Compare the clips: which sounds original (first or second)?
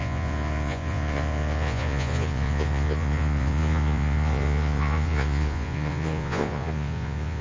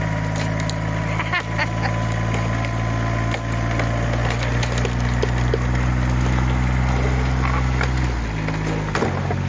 second